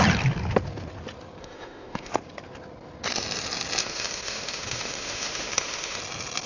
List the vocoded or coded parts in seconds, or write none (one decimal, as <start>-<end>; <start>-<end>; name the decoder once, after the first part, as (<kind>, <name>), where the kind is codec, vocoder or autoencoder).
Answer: 1.4-2.1 (autoencoder, DAC-VAE); 3.8-6.0